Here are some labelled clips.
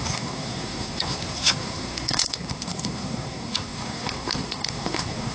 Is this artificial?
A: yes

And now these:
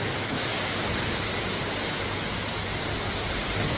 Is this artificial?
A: no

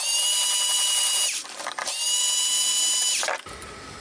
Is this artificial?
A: no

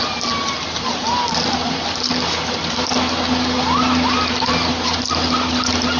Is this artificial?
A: no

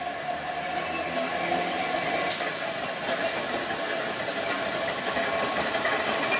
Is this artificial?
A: no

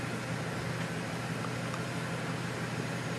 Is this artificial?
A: no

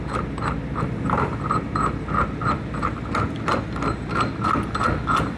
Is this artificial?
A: no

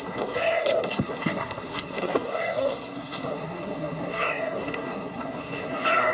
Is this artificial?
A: yes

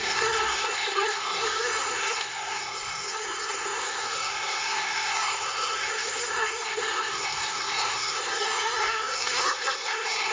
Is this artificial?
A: yes